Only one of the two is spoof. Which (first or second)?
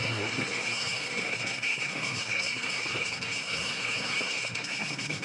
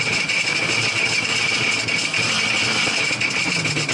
first